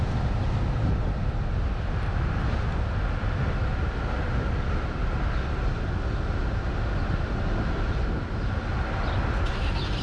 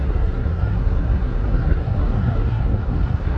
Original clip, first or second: first